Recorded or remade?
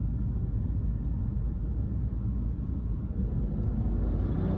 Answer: recorded